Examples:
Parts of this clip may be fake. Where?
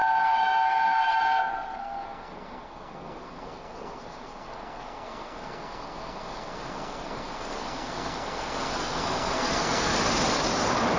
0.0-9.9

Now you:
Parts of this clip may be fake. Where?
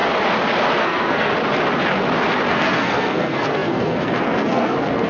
0.8-1.3; 2.5-5.1